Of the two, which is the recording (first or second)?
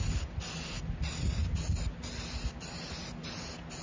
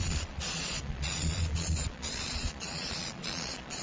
first